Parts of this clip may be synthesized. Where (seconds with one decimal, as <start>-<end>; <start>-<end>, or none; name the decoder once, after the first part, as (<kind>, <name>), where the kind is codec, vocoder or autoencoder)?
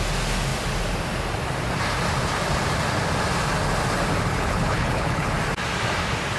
4.3-5.3 (codec, HILCodec)